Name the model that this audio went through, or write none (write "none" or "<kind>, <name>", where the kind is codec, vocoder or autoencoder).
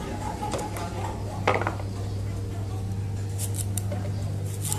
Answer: none